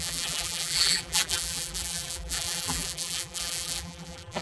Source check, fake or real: fake